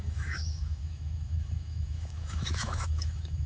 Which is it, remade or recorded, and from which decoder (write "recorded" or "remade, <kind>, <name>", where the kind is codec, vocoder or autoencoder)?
remade, autoencoder, DAC-VAE